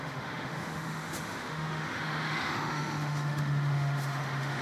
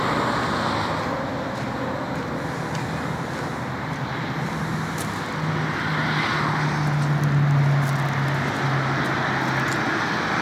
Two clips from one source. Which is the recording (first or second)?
second